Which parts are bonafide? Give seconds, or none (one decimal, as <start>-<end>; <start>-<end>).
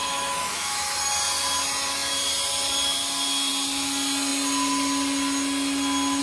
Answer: 1.1-6.2